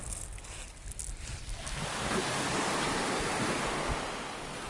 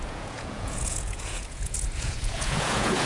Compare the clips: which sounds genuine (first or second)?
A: first